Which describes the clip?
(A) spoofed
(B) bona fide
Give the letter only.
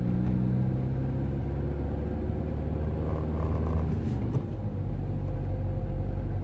B